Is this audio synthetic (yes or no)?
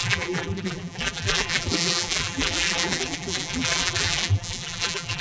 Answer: yes